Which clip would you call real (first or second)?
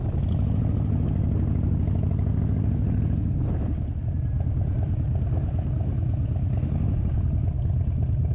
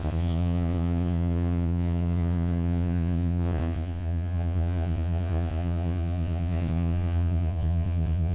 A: first